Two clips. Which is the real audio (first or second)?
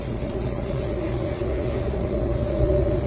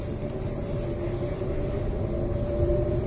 second